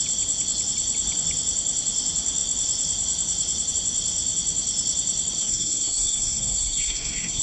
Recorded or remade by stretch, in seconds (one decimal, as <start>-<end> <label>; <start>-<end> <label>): 0.0-5.4 recorded; 5.4-7.4 remade